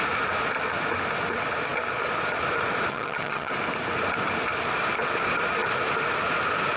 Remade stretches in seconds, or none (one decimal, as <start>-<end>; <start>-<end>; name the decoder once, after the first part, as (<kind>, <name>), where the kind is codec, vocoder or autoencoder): 2.9-3.5 (vocoder, HiFi-GAN)